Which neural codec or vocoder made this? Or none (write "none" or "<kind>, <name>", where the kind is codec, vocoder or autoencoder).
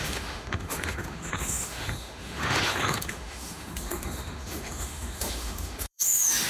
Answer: autoencoder, DAC-VAE